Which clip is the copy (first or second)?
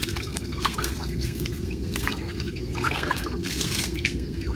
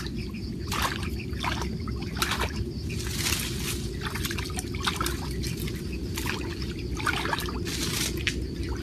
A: first